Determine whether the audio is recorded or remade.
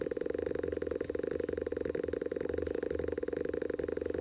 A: recorded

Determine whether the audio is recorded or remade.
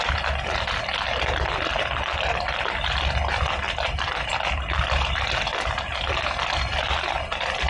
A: recorded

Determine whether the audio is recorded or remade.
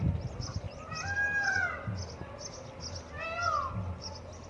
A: recorded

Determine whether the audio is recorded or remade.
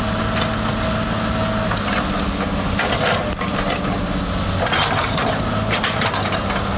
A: recorded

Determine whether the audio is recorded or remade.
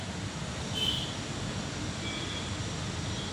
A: recorded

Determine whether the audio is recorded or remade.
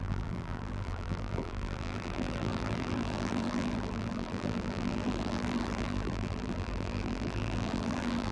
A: remade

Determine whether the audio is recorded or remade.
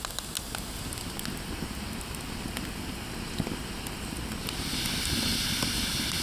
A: recorded